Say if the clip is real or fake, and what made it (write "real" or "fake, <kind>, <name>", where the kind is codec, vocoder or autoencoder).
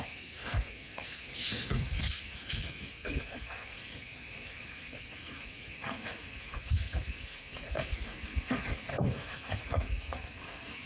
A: fake, codec, SNAC